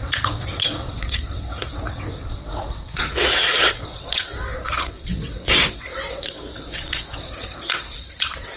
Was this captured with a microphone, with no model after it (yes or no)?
no